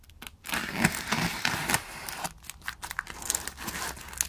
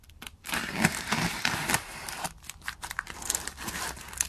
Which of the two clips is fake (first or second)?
second